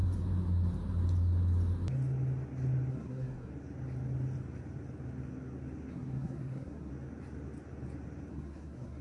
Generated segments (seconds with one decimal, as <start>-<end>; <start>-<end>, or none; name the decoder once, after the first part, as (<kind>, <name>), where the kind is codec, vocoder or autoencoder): 2.9-3.5 (codec, SNAC); 5.9-6.9; 8.3-9.0